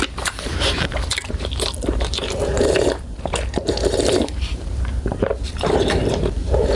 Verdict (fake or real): fake